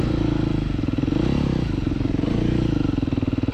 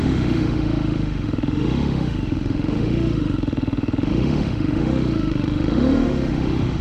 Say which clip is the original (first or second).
first